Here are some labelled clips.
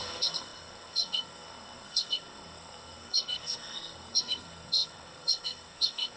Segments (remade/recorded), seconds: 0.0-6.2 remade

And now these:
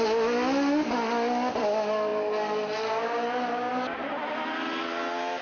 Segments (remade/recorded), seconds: 0.0-5.4 recorded

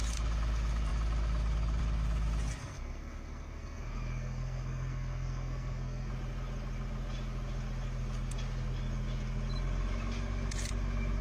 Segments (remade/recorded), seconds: 0.0-2.6 recorded; 2.6-6.1 remade; 6.1-11.2 recorded